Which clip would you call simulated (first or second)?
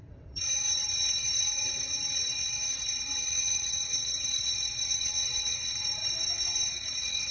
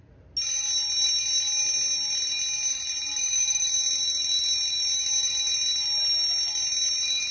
first